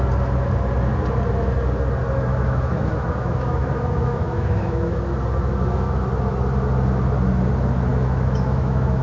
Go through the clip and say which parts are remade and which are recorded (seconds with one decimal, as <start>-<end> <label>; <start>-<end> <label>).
0.0-2.3 recorded; 2.3-5.0 remade; 5.0-7.9 recorded; 7.9-9.0 remade